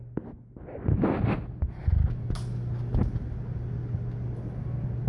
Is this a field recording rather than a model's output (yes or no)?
yes